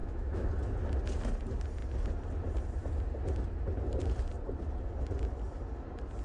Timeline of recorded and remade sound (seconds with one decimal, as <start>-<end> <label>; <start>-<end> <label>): 0.0-0.5 remade; 0.5-6.2 recorded